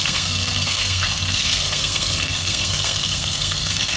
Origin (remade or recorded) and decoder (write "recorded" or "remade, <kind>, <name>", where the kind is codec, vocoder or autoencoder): remade, codec, SNAC